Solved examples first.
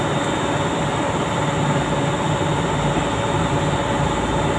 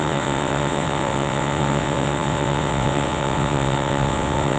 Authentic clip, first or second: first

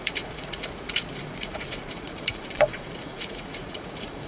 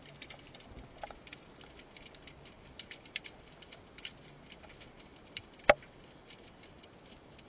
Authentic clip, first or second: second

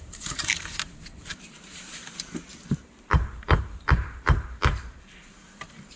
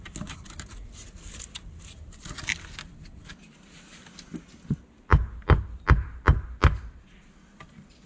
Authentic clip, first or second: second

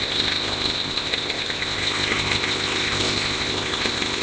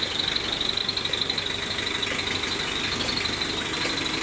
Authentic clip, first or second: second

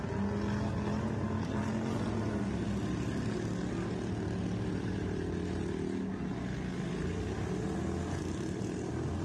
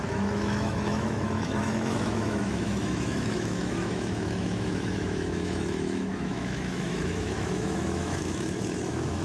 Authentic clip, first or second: first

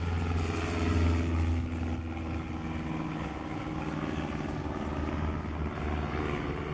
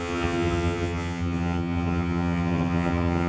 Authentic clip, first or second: first